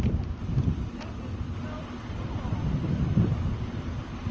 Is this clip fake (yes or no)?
no